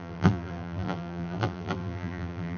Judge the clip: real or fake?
fake